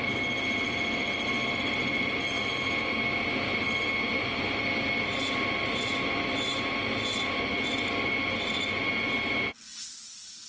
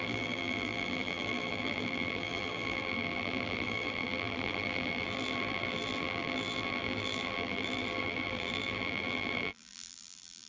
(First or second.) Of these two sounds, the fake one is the second